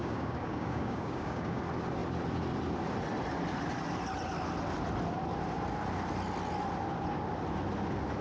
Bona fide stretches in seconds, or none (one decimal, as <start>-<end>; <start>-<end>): 1.6-8.2